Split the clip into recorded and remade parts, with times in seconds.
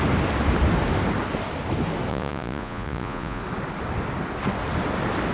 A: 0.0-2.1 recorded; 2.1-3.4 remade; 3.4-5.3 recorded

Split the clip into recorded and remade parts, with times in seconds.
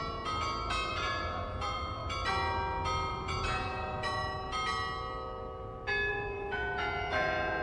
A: 0.0-0.9 recorded; 0.9-2.0 remade; 2.0-3.1 recorded; 3.1-4.2 remade; 4.2-6.1 recorded; 6.1-7.6 remade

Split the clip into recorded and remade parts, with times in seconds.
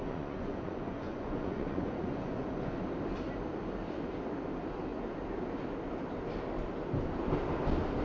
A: 0.0-2.8 remade; 2.8-8.0 recorded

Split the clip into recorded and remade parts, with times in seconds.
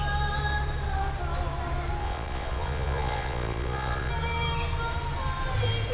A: 0.0-2.0 recorded; 2.0-4.1 remade; 4.1-5.9 recorded